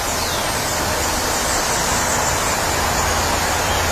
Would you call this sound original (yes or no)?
yes